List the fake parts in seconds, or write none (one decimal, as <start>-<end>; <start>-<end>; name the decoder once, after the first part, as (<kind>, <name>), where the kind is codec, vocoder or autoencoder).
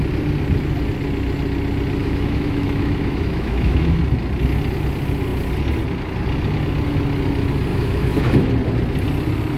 2.0-4.0 (autoencoder, DAC-VAE); 7.7-8.5